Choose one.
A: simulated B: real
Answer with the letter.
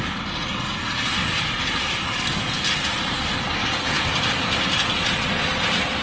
B